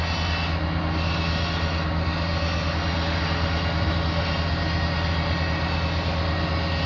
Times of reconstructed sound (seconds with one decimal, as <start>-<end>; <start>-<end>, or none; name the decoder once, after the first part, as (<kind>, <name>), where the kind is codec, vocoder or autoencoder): none